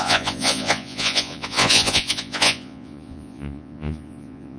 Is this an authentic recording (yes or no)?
no